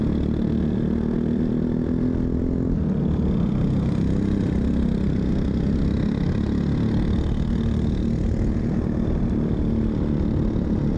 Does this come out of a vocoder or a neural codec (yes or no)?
no